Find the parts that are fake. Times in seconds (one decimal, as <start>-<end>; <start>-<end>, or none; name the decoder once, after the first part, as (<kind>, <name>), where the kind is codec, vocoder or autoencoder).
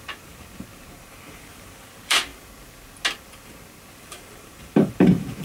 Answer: 0.0-2.3 (vocoder, BigVGAN v2); 3.9-5.4